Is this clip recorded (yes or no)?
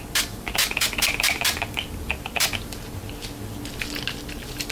yes